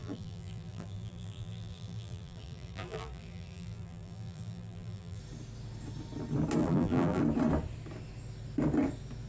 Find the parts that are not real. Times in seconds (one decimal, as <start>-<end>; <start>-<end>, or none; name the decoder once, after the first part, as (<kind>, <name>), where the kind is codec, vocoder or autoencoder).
0.0-5.2 (vocoder, BigVGAN v2); 6.6-7.2